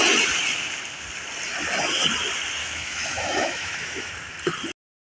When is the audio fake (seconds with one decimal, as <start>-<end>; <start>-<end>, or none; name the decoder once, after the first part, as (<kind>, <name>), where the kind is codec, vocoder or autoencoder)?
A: 2.6-4.1 (autoencoder, DAC-VAE)